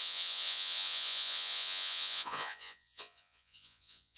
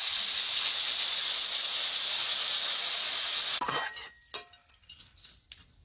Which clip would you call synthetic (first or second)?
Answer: first